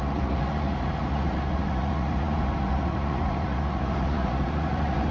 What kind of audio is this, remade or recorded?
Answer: remade